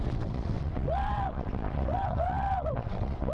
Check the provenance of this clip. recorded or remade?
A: remade